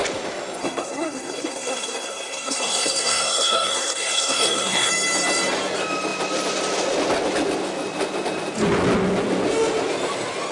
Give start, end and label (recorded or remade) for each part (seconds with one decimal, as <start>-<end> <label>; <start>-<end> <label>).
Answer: 0.0-0.6 recorded; 0.6-4.9 remade; 4.9-10.5 recorded